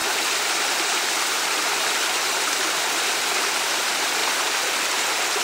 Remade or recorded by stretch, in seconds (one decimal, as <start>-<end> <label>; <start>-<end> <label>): 0.0-4.2 remade; 4.2-5.4 recorded